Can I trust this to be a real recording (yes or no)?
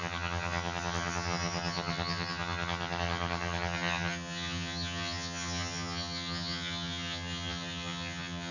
no